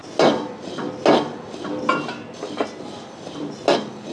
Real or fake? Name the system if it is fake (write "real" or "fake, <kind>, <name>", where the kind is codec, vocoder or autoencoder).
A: real